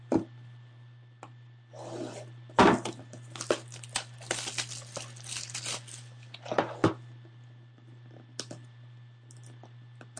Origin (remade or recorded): recorded